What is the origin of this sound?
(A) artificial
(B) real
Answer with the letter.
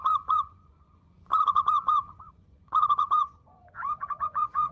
A